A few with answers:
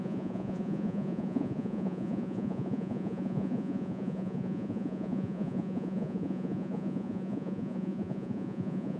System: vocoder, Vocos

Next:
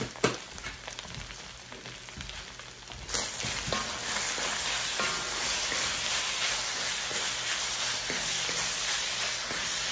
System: none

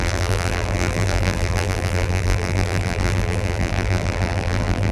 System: vocoder, BigVGAN v2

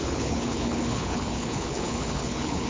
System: codec, HILCodec